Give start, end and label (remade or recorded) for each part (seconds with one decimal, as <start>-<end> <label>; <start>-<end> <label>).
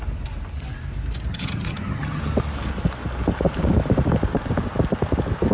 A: 0.0-1.3 recorded; 1.3-2.2 remade; 2.2-5.5 recorded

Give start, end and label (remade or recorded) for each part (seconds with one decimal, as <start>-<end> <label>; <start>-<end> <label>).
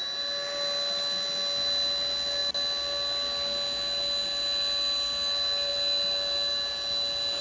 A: 0.0-7.4 recorded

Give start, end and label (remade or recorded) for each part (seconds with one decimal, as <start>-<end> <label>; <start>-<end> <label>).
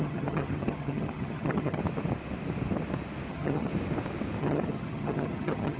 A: 0.0-1.8 remade; 1.8-3.3 recorded; 3.3-3.7 remade; 3.7-4.4 recorded; 4.4-5.8 remade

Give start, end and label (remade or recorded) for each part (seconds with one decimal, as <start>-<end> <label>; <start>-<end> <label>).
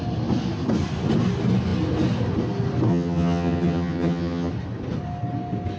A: 0.0-2.9 recorded; 2.9-4.5 remade; 4.5-5.8 recorded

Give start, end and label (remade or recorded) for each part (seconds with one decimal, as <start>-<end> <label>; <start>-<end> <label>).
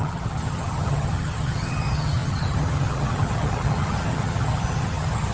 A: 0.0-5.3 remade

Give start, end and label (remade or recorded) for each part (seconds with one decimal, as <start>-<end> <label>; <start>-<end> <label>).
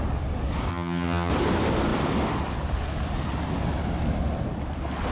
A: 0.0-0.7 recorded; 0.7-1.3 remade; 1.3-5.1 recorded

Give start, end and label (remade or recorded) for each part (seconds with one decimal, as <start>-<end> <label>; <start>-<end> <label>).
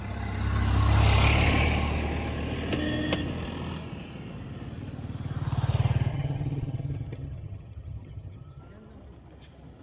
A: 0.0-6.1 recorded; 6.1-8.6 remade; 8.6-9.8 recorded